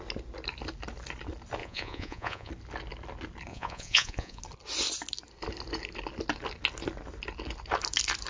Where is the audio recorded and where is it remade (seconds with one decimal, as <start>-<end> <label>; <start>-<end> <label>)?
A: 0.0-1.6 recorded; 1.6-2.5 remade; 2.5-3.5 recorded; 3.5-4.4 remade; 4.4-8.3 recorded

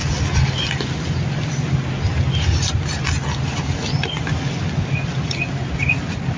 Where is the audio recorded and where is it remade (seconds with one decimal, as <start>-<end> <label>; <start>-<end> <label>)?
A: 0.0-6.4 recorded

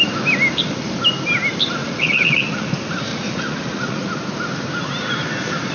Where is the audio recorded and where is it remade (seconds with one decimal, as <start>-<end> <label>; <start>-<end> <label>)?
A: 0.0-1.8 recorded; 1.8-2.7 remade; 2.7-3.1 recorded; 3.1-4.1 remade; 4.1-5.7 recorded

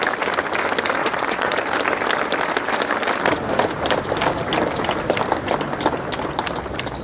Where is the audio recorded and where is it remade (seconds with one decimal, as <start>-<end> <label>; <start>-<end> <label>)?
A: 0.0-1.0 recorded; 1.0-1.6 remade; 1.6-7.0 recorded

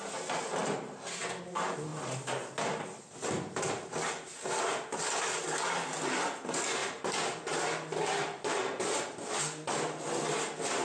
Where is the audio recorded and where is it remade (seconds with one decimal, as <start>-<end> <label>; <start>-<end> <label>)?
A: 0.0-10.8 recorded

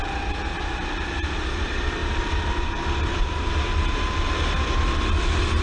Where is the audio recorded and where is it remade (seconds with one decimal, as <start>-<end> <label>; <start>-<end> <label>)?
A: 0.0-5.6 recorded

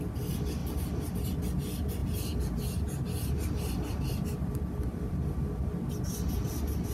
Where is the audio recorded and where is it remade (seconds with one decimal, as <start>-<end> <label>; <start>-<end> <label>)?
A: 0.0-6.9 recorded

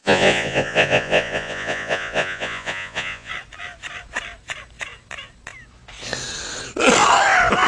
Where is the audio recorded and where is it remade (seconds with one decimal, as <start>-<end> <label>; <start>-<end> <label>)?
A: 0.0-3.3 remade; 3.3-7.7 recorded